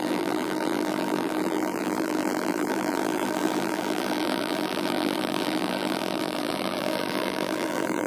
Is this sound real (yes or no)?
no